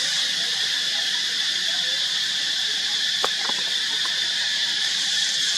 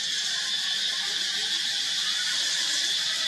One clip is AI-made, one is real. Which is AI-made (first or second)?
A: first